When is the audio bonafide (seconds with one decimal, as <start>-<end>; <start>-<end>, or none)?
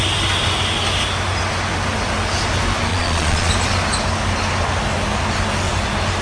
0.0-2.9; 3.5-6.2